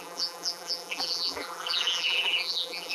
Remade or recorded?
remade